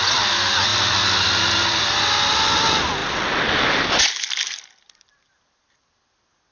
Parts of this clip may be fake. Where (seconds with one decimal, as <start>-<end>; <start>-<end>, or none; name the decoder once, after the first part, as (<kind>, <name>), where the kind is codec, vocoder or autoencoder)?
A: none